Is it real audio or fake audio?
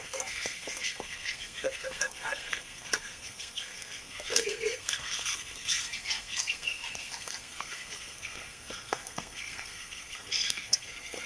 fake